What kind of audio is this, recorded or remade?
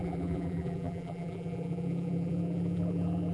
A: remade